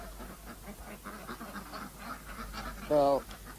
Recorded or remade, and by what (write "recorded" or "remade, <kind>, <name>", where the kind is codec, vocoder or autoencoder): recorded